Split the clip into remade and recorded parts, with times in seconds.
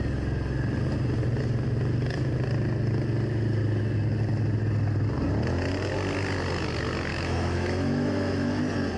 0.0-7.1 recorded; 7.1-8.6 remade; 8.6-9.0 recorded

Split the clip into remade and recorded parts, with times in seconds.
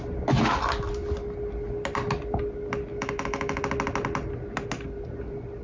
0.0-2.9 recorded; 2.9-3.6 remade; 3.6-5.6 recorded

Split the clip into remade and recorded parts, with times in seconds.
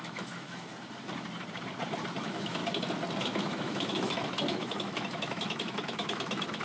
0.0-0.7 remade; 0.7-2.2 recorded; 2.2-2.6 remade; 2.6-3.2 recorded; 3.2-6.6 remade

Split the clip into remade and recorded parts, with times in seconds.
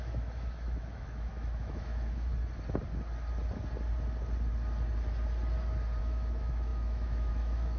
0.0-2.3 remade; 2.3-6.0 recorded; 6.0-7.8 remade